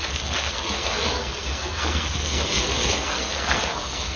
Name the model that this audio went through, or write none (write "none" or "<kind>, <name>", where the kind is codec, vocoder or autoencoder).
codec, SNAC